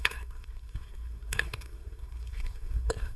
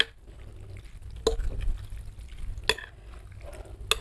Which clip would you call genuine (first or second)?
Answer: second